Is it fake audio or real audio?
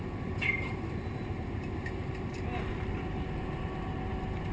real